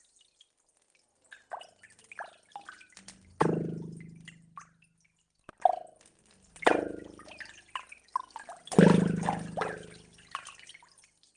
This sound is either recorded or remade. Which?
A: recorded